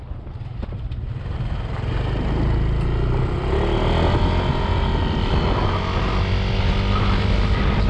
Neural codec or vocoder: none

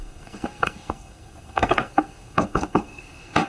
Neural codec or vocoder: codec, SNAC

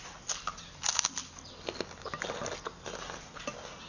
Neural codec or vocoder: none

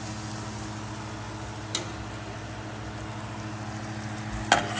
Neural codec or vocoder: none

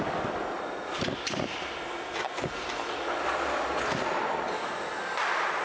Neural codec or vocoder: none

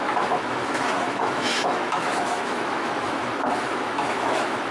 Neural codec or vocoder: autoencoder, DAC-VAE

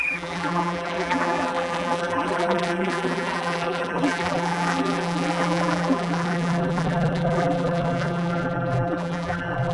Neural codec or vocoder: vocoder, BigVGAN v2